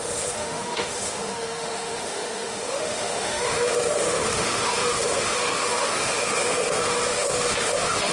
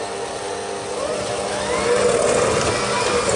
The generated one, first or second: first